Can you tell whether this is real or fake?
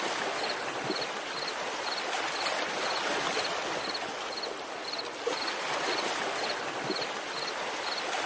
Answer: real